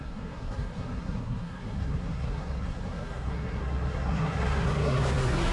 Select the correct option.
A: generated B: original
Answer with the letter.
A